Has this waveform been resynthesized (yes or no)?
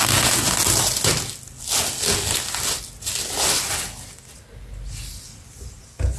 no